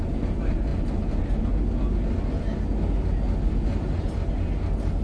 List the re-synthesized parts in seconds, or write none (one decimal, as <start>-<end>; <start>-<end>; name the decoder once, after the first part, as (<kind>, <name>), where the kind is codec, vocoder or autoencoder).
none